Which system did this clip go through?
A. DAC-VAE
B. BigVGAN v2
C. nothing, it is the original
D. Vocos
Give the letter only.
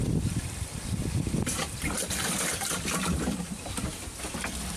B